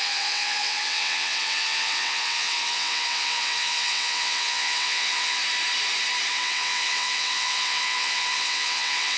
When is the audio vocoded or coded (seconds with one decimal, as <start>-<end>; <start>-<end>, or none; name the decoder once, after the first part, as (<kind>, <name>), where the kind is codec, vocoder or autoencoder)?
0.0-5.4 (vocoder, WaveNeXt); 6.3-9.2

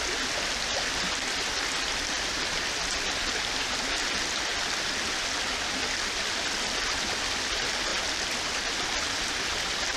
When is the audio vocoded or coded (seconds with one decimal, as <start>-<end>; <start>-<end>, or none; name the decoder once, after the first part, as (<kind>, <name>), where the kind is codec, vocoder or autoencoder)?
none

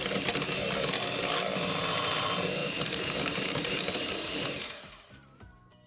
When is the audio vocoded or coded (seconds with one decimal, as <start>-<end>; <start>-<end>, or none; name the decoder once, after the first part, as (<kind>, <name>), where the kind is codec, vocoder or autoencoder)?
2.6-4.9 (vocoder, BigVGAN v2)

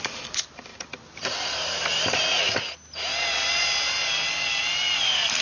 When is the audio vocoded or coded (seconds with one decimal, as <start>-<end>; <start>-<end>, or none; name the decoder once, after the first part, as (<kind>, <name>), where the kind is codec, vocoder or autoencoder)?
0.7-2.2 (vocoder, BigVGAN v2)

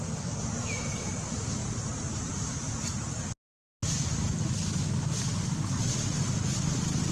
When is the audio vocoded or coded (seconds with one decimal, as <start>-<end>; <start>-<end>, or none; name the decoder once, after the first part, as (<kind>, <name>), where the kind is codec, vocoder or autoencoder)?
0.6-1.1 (autoencoder, DAC-VAE)

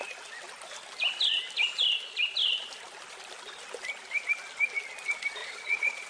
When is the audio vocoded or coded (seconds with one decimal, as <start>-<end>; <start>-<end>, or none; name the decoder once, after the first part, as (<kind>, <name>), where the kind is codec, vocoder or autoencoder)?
5.4-6.1 (vocoder, Vocos)

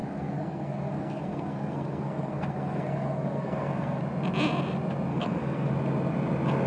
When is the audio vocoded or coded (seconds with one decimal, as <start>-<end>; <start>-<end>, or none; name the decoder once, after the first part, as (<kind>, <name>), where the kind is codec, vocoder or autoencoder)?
0.0-4.0 (codec, SNAC); 5.1-5.7

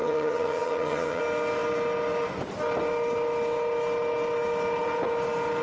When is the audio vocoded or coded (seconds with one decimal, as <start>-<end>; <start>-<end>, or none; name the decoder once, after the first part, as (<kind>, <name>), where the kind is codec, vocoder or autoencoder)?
0.0-1.2 (vocoder, HiFi-GAN)